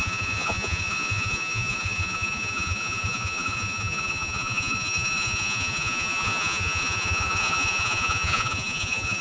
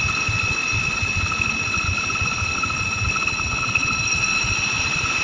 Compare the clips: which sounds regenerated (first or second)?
first